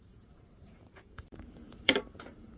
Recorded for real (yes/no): no